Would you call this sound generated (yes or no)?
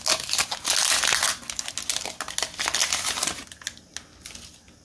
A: no